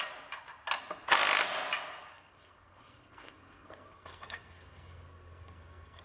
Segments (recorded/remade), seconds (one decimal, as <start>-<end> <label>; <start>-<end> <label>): 0.0-2.1 recorded; 2.1-6.0 remade